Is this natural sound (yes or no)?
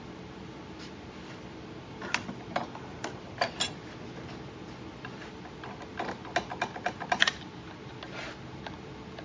yes